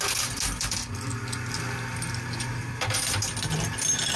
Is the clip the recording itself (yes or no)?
yes